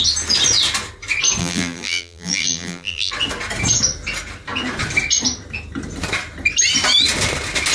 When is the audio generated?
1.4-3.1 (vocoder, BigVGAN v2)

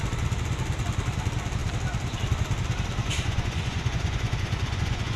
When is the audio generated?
3.0-5.2 (vocoder, Vocos)

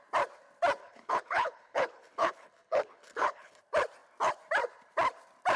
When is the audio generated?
0.8-3.6 (codec, HILCodec)